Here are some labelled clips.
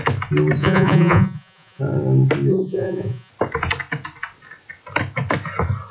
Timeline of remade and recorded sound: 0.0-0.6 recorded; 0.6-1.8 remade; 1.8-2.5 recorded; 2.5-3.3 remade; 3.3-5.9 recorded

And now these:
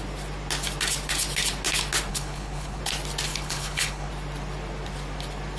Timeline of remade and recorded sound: 0.0-2.1 recorded; 2.1-2.8 remade; 2.8-3.3 recorded; 3.3-4.1 remade; 4.1-5.6 recorded